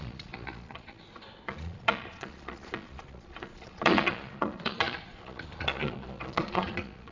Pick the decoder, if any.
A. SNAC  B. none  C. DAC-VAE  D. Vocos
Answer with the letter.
D